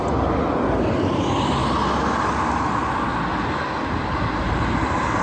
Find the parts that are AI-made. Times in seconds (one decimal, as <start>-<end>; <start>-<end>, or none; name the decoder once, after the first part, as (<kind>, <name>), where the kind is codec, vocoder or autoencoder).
3.3-5.2 (vocoder, BigVGAN v2)

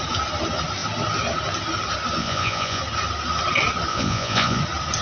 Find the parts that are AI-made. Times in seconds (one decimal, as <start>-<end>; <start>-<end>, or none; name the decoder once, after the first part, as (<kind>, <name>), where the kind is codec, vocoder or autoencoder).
2.2-2.8 (vocoder, Vocos); 3.9-4.6

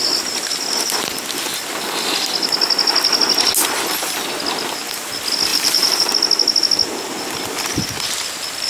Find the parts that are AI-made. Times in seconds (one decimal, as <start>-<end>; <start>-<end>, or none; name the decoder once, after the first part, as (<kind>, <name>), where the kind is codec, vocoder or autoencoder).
5.5-6.1 (vocoder, BigVGAN v2)

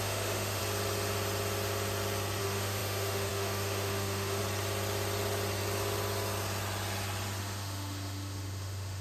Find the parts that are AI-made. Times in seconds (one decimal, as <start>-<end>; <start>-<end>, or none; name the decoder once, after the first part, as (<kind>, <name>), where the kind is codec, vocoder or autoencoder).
0.0-0.6 (autoencoder, DAC-VAE); 2.4-4.4; 7.4-9.0

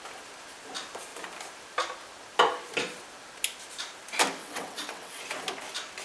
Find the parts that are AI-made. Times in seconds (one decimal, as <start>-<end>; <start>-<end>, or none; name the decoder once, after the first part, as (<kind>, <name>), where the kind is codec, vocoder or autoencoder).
4.4-5.2 (vocoder, WaveNeXt)

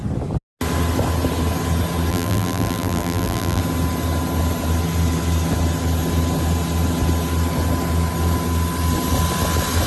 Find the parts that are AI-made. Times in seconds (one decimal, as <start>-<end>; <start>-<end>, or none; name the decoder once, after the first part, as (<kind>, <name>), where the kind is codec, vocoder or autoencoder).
2.1-3.6 (vocoder, BigVGAN v2)

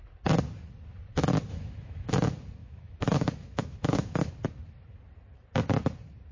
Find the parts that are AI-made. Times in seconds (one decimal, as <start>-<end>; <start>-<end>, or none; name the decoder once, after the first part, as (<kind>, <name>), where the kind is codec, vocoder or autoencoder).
1.5-2.1 (autoencoder, DAC-VAE); 2.6-4.3